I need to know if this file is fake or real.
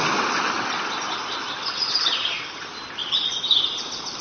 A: real